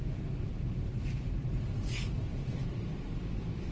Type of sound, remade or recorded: recorded